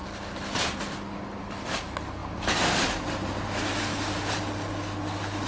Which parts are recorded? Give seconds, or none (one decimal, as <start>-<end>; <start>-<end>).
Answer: 0.0-2.2; 3.3-3.9; 4.4-5.5

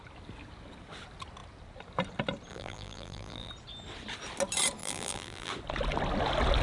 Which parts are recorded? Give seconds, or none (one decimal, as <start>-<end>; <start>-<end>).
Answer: 0.0-2.5; 3.5-4.8; 5.5-6.6

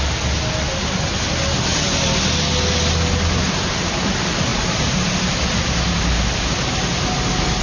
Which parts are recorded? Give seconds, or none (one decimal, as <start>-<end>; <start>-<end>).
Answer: 0.0-4.5; 6.5-7.6